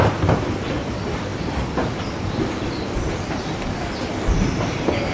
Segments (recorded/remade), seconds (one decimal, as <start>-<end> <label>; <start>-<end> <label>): 0.0-1.3 recorded; 1.3-4.4 remade; 4.4-5.1 recorded